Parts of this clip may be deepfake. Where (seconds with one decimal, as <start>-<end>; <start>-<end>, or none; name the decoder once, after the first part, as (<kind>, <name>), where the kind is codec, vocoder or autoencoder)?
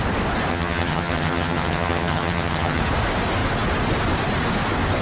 0.5-2.8 (vocoder, HiFi-GAN)